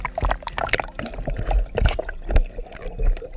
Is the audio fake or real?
real